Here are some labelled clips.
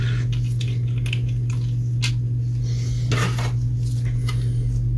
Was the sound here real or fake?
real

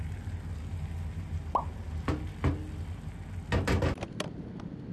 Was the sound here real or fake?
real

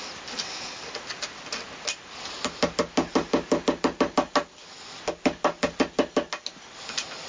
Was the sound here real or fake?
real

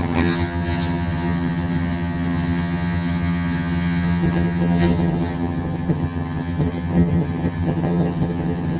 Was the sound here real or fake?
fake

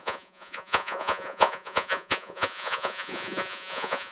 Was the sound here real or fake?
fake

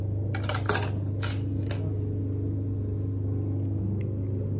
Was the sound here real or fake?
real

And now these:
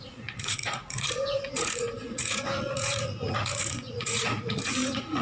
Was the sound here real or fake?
fake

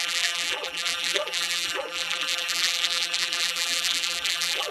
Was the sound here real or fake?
fake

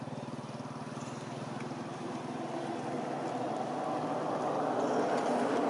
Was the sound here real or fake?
real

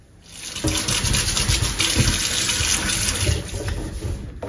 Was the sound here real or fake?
real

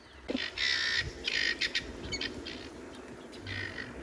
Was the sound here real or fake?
real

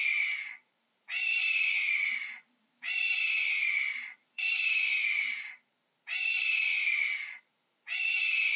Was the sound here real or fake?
fake